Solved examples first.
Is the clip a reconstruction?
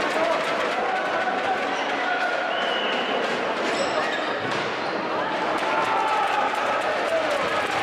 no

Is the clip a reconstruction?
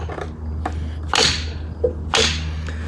no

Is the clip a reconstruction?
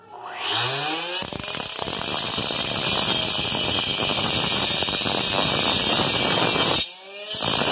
no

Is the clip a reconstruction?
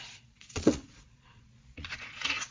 yes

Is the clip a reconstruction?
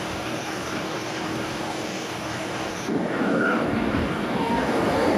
yes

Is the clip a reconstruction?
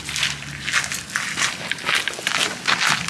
no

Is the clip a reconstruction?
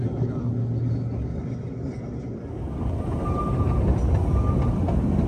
no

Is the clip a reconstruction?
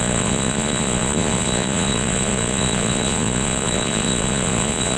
yes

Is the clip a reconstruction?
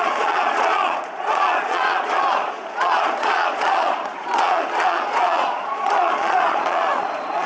yes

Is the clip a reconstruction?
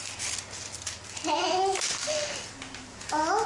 no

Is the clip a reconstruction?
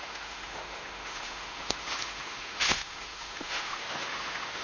yes